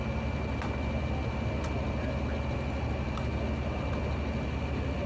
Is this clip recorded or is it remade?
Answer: recorded